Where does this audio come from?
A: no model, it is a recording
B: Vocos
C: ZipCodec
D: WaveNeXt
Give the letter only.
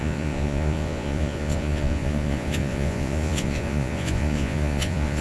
B